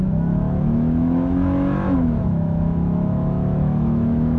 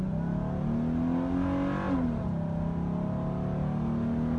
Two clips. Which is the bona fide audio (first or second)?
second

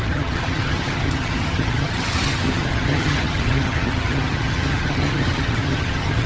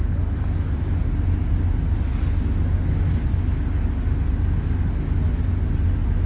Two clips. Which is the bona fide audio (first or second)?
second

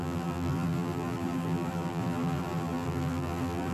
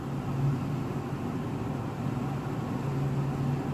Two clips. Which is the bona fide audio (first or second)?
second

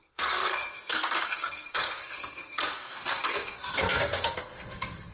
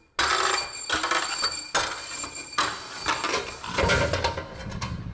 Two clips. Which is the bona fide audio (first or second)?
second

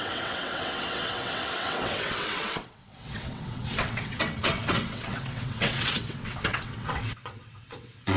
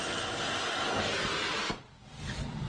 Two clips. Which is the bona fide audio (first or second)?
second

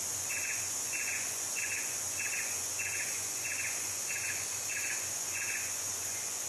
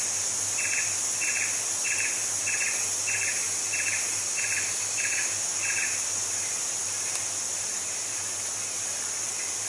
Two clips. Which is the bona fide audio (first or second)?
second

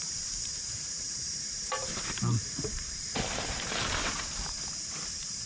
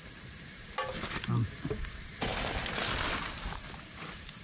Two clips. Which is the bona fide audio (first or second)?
second